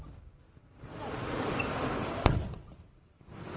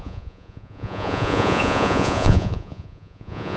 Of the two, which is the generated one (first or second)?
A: second